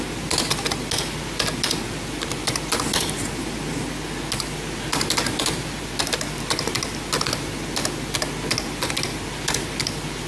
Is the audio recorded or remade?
recorded